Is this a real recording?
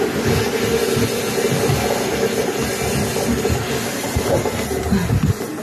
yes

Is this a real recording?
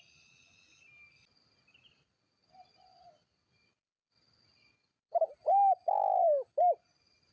yes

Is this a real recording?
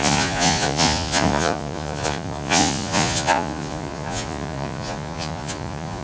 no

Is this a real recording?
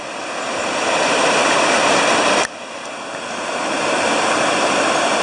yes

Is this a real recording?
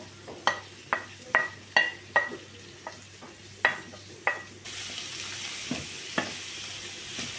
yes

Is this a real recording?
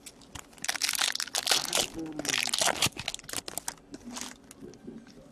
yes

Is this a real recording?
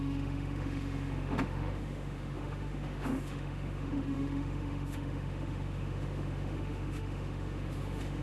no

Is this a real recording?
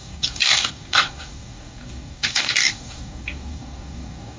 no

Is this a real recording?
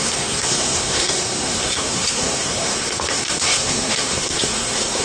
no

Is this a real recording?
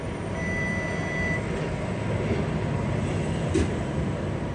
yes